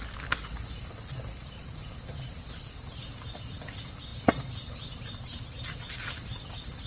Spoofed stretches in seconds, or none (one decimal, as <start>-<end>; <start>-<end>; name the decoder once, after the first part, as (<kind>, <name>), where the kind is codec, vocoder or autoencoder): none